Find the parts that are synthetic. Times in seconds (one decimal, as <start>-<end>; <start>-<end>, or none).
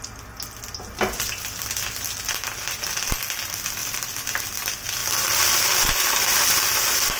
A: 3.8-4.4; 5.0-6.6